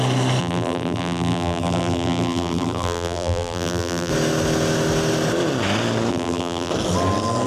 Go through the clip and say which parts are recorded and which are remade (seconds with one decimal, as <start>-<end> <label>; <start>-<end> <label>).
0.0-0.4 recorded; 0.4-4.1 remade; 4.1-6.1 recorded; 6.1-6.7 remade; 6.7-7.5 recorded